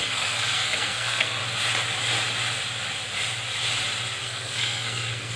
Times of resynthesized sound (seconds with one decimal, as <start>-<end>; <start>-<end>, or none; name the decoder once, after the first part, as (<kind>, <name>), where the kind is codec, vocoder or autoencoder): 0.0-1.4 (codec, SNAC); 4.2-5.4